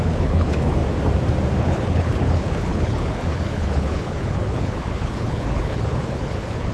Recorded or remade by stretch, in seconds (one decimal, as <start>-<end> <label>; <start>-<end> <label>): 0.0-0.8 remade; 0.8-1.6 recorded; 1.6-6.7 remade